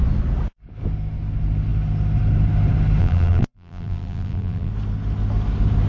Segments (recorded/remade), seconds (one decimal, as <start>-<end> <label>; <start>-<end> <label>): 0.0-3.0 recorded; 3.0-4.7 remade; 4.7-5.9 recorded